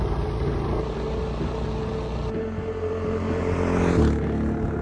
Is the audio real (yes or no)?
yes